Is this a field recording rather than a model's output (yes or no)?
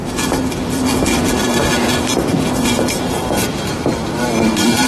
yes